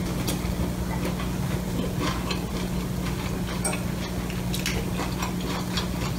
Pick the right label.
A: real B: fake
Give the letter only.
A